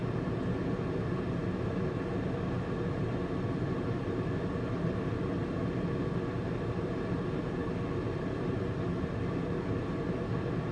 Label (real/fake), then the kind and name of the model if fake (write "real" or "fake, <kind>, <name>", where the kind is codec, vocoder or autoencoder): real